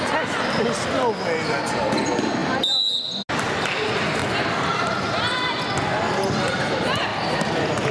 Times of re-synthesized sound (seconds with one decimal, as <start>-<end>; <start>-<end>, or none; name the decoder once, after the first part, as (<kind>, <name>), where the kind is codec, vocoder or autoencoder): 4.2-4.7 (vocoder, BigVGAN v2); 7.1-7.9